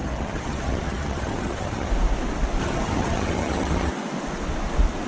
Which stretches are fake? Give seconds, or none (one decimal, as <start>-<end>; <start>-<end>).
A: 0.0-1.9; 2.6-3.9